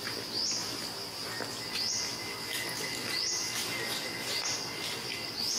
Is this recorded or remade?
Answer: recorded